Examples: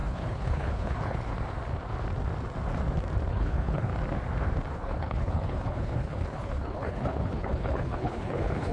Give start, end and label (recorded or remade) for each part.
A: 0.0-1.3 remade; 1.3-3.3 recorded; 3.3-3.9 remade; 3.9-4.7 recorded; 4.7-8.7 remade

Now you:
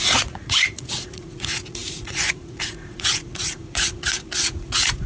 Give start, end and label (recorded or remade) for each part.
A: 0.0-5.1 remade

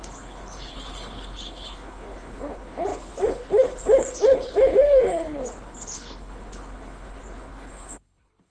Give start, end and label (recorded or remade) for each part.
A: 0.0-8.5 remade

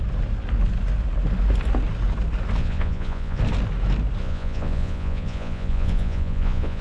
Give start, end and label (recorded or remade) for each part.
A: 0.0-2.6 recorded; 2.6-3.4 remade; 3.4-4.2 recorded; 4.2-6.8 remade

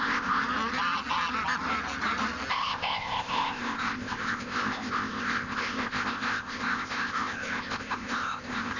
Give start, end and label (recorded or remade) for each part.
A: 0.0-0.4 remade; 0.4-2.5 recorded; 2.5-8.8 remade

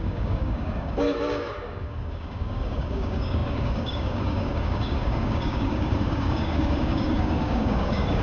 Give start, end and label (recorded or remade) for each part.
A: 0.0-8.2 remade

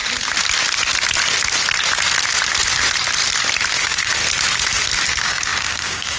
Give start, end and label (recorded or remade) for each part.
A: 0.0-3.7 recorded; 3.7-4.2 remade; 4.2-5.1 recorded; 5.1-6.2 remade